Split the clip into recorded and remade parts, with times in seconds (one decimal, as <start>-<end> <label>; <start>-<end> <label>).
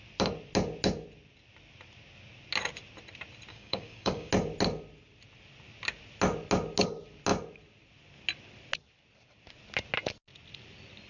0.0-3.5 recorded; 3.5-4.3 remade; 4.3-11.1 recorded